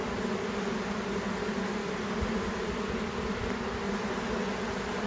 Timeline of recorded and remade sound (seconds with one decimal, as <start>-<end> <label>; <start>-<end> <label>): 0.0-5.1 recorded